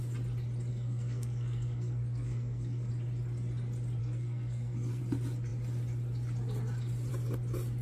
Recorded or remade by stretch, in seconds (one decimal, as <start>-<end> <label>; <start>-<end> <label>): 0.0-0.7 recorded; 0.7-2.9 remade; 2.9-4.0 recorded; 4.0-5.0 remade; 5.0-7.8 recorded